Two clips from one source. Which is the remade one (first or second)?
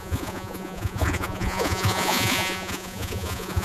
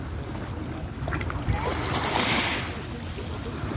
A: first